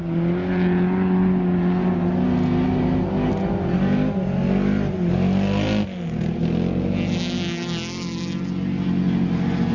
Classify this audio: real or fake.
real